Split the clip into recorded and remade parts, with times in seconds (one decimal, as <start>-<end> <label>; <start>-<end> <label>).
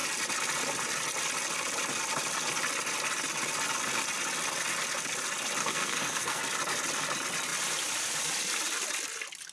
0.0-5.6 recorded; 5.6-6.4 remade; 6.4-9.5 recorded